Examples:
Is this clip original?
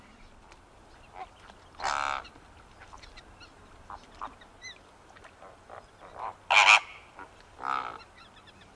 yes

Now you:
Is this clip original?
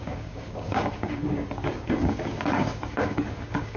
no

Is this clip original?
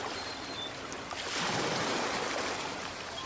yes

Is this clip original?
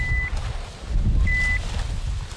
yes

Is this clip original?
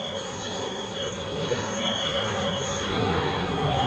no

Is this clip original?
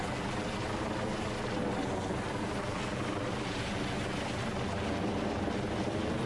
yes